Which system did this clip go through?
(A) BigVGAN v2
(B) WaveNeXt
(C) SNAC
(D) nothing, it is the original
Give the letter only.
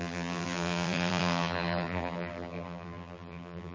A